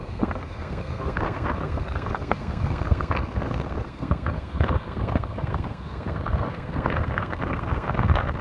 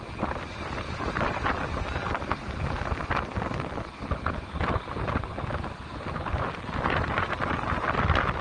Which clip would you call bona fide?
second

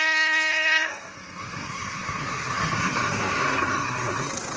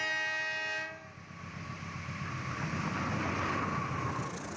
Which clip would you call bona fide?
second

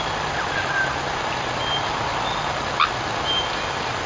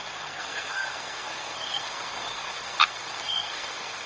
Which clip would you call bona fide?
first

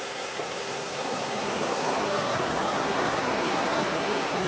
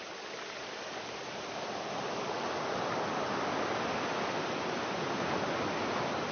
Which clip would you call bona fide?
second